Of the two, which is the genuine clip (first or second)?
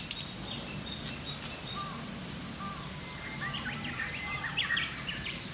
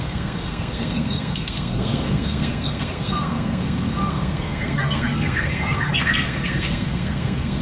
first